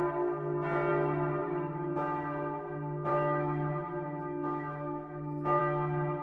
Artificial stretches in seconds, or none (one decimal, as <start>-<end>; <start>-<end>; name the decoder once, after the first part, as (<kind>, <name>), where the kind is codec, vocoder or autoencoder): 1.4-1.9 (autoencoder, DAC-VAE); 3.1-5.6